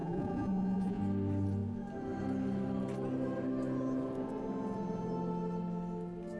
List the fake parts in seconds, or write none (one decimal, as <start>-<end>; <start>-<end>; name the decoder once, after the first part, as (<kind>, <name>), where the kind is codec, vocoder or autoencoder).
0.0-1.0 (vocoder, Vocos)